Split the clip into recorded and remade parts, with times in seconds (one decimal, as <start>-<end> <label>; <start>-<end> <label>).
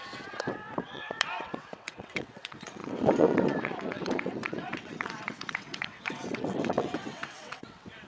0.0-8.1 remade